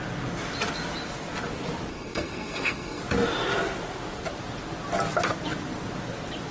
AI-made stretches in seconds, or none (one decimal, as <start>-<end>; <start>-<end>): 1.9-3.0